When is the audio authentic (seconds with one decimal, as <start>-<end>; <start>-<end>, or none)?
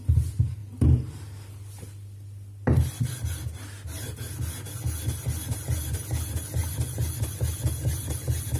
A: 0.0-8.6